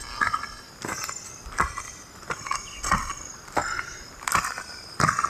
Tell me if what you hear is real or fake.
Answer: real